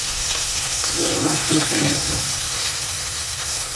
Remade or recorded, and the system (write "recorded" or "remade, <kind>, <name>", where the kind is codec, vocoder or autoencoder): remade, codec, SNAC